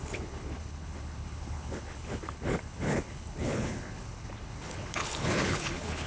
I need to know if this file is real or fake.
fake